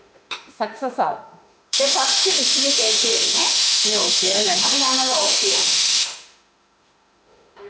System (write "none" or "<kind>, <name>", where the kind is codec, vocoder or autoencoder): autoencoder, DAC-VAE